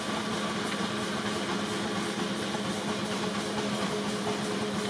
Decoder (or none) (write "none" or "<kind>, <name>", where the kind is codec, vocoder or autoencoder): none